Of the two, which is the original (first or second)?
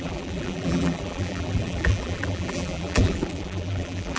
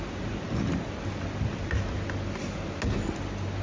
second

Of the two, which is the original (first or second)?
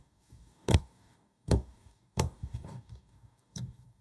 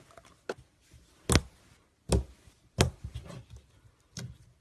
second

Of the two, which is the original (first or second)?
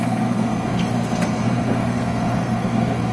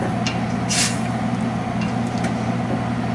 second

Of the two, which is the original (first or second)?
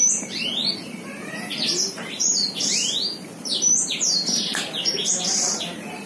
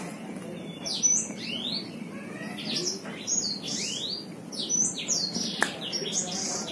second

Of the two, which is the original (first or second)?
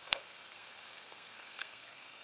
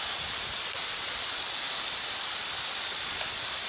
second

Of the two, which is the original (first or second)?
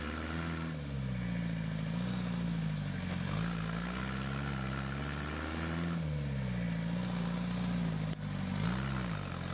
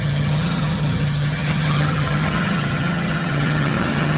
first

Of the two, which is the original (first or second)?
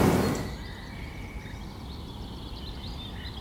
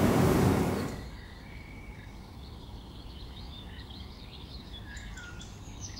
first